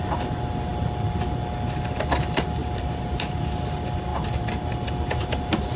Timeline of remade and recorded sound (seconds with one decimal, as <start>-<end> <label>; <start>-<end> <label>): 0.0-2.6 recorded; 2.6-3.4 remade; 3.4-4.1 recorded; 4.1-4.7 remade; 4.7-5.8 recorded